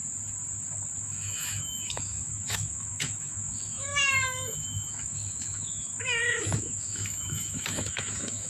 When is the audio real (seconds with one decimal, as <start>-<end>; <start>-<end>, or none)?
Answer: 0.0-1.0